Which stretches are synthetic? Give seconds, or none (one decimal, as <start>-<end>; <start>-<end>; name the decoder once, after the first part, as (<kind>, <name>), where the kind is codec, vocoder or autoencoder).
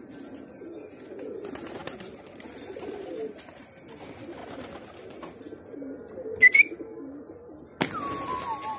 none